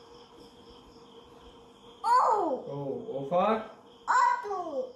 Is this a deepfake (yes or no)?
no